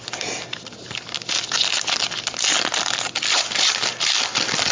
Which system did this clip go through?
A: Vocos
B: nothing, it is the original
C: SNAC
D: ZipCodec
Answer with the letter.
B